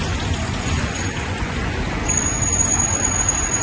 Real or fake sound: fake